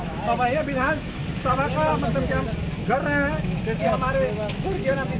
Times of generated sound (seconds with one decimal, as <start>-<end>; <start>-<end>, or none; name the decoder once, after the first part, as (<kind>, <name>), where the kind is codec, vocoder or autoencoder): 0.0-1.2 (autoencoder, DAC-VAE); 2.8-5.2